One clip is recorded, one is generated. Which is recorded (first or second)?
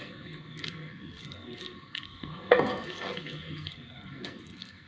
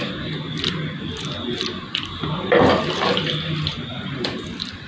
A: second